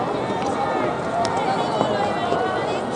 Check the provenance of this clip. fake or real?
real